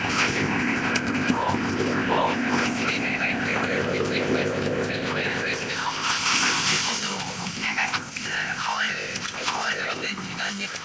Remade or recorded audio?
remade